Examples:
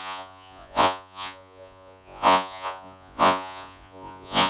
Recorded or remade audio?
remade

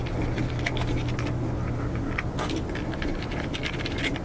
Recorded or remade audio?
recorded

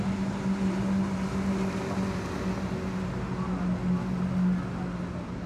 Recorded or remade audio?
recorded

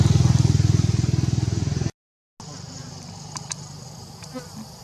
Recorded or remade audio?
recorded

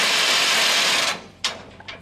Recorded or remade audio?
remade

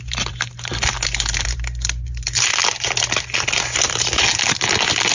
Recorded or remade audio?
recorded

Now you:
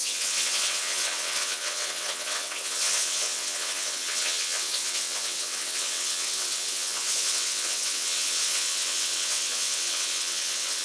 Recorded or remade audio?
remade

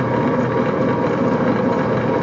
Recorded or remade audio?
recorded